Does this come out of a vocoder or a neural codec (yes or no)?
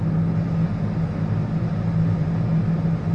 no